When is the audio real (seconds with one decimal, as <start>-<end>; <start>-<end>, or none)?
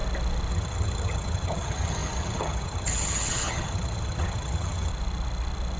0.0-0.5; 4.9-5.8